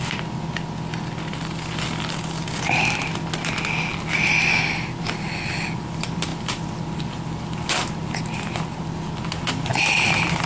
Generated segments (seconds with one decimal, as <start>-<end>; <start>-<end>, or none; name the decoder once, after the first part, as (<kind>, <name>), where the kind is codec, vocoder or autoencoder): none